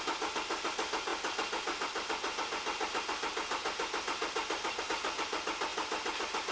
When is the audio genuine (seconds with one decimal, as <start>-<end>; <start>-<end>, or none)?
0.0-6.5